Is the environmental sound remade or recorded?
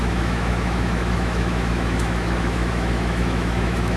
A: remade